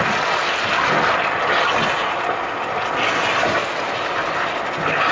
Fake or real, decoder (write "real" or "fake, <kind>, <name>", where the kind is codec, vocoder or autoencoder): real